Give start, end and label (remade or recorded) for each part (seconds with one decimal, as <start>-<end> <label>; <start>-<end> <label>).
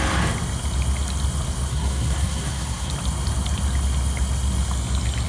0.0-1.7 recorded; 1.7-2.9 remade; 2.9-5.3 recorded